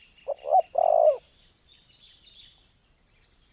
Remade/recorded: recorded